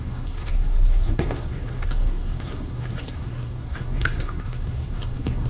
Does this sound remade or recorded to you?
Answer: remade